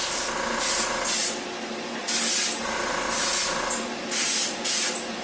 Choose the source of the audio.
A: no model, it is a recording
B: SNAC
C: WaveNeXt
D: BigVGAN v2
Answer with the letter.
A